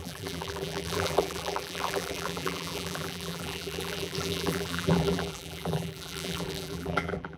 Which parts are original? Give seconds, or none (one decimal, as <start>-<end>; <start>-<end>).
none